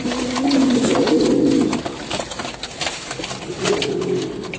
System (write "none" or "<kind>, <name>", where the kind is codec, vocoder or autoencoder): none